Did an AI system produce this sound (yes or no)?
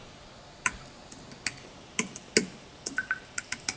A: no